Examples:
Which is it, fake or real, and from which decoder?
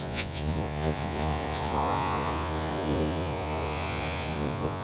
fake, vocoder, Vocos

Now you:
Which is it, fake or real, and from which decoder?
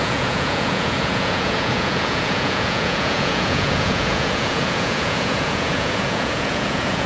fake, vocoder, Vocos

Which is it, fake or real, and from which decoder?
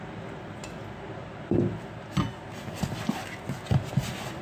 real